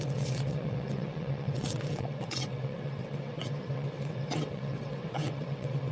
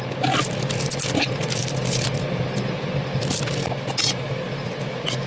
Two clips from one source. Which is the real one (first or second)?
second